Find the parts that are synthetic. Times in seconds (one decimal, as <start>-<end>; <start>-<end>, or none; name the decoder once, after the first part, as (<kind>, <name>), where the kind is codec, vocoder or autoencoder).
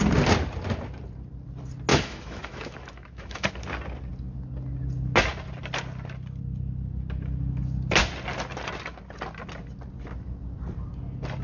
1.9-3.5 (autoencoder, DAC-VAE)